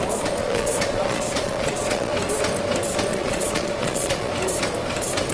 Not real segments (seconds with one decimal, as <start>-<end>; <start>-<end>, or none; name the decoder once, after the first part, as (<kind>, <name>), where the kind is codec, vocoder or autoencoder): 0.4-2.1 (vocoder, Vocos); 3.1-4.3

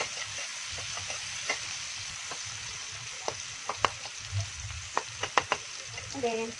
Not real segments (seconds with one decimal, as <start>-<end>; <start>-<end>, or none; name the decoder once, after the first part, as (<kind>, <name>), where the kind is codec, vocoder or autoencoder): none

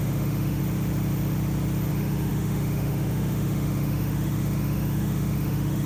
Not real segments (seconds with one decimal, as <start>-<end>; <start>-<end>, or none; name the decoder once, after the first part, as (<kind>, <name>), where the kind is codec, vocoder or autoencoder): 0.0-0.6 (autoencoder, DAC-VAE); 1.9-5.9

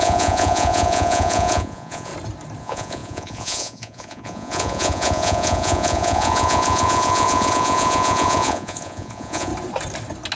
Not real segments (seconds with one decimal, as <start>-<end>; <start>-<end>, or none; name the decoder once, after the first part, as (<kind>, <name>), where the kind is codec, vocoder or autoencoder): 0.0-2.1 (vocoder, Vocos); 2.6-9.5

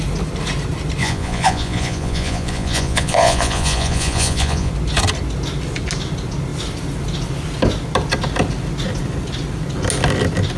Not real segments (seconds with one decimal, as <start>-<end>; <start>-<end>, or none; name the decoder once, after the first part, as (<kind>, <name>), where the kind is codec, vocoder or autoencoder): 1.0-4.7 (vocoder, Vocos)